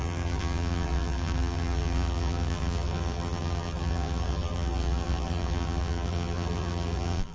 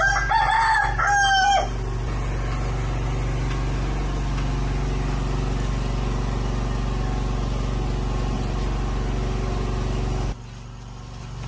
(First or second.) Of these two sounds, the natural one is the second